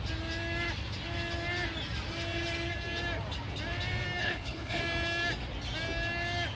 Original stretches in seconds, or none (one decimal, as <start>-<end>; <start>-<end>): 0.0-4.2; 4.8-6.5